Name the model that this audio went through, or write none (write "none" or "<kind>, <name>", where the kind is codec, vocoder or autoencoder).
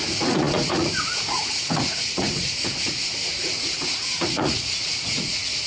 vocoder, Vocos